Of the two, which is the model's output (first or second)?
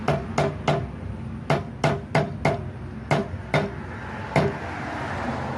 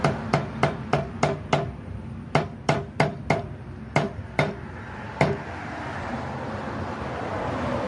second